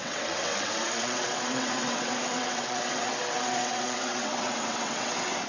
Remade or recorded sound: remade